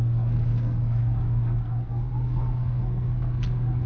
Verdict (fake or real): fake